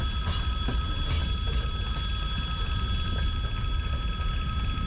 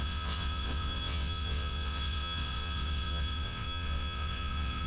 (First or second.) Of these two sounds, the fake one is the second